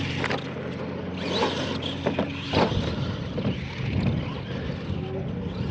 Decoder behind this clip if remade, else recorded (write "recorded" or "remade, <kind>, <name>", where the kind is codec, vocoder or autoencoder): recorded